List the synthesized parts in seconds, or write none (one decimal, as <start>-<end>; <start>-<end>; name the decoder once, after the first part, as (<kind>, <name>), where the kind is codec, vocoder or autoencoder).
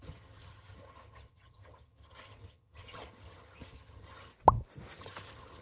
0.0-4.3 (vocoder, HiFi-GAN); 5.0-5.6